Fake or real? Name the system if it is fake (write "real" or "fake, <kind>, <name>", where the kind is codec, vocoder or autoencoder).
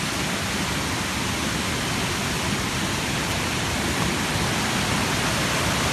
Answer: real